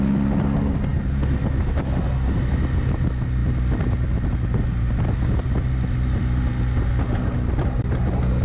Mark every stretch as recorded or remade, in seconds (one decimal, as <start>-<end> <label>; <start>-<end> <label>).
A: 0.0-8.4 recorded